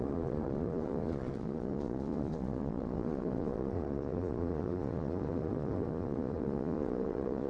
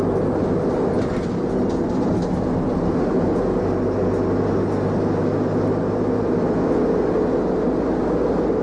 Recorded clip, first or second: second